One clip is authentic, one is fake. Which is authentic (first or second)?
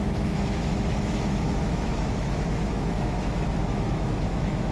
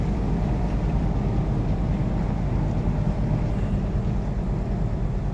second